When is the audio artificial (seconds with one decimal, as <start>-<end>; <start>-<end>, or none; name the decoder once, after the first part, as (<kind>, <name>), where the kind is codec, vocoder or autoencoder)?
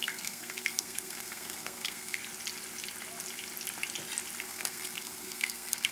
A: 0.0-2.2 (codec, SNAC); 4.4-5.9